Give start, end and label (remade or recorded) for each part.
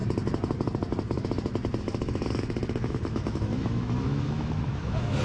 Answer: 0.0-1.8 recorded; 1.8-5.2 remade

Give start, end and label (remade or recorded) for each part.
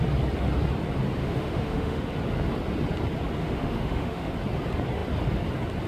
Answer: 0.0-1.2 recorded; 1.2-2.1 remade; 2.1-3.4 recorded; 3.4-4.3 remade; 4.3-5.9 recorded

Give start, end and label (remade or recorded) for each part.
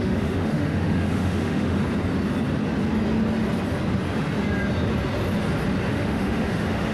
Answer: 0.0-1.8 remade; 1.8-5.9 recorded; 5.9-6.9 remade